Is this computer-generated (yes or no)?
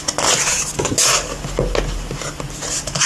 no